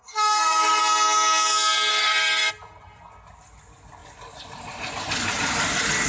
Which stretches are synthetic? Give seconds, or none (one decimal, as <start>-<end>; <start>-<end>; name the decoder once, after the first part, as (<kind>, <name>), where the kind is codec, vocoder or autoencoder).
0.0-0.8 (codec, SNAC); 1.9-2.5